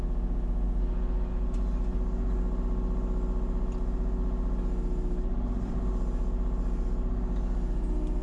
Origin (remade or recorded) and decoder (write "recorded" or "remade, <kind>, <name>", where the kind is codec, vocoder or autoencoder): recorded